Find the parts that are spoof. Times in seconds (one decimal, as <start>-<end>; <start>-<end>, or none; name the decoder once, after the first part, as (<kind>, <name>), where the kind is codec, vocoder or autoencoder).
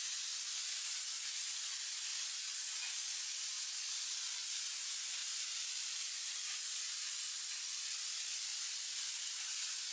5.2-6.8 (vocoder, BigVGAN v2)